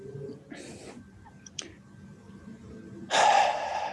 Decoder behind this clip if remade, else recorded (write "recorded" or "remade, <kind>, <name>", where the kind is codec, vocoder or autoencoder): remade, vocoder, BigVGAN v2